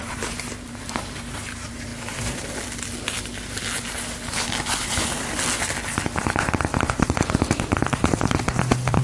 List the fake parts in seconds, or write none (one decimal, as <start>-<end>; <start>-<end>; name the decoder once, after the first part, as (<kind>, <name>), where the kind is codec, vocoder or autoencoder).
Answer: 0.0-1.9 (vocoder, BigVGAN v2); 6.9-9.0